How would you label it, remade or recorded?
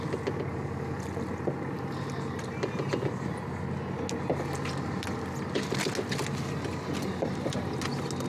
recorded